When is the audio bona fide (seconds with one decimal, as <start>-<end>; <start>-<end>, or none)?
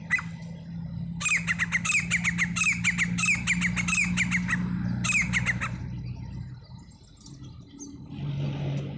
0.0-9.0